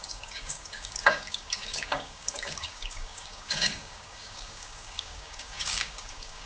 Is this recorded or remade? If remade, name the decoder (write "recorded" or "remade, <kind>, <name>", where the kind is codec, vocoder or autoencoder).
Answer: remade, codec, DAC